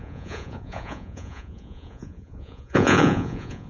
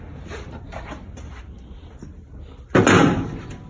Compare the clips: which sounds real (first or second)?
second